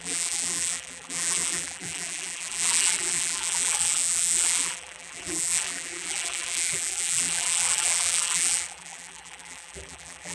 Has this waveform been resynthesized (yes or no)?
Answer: yes